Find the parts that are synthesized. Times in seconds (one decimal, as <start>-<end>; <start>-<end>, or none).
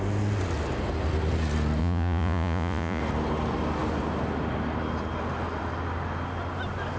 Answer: 1.8-3.0